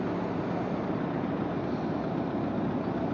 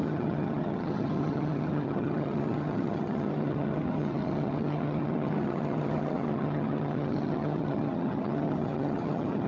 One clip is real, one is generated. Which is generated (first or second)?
second